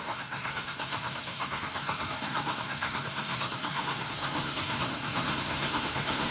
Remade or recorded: remade